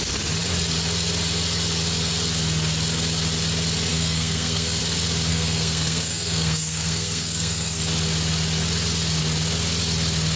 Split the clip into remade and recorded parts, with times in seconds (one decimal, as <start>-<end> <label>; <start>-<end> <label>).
0.0-3.9 recorded; 3.9-4.8 remade; 4.8-5.3 recorded; 5.3-7.8 remade; 7.8-10.4 recorded